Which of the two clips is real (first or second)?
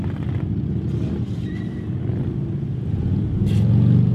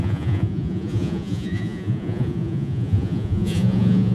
first